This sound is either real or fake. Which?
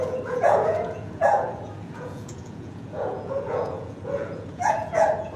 fake